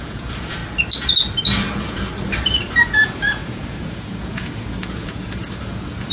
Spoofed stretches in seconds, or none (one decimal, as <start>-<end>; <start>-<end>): 0.0-0.6; 1.7-2.1; 2.6-6.1